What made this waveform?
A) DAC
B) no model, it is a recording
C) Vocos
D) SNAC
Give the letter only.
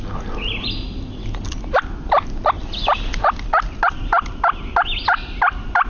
B